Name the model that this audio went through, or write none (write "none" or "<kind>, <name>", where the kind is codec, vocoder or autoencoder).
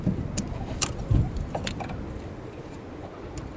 none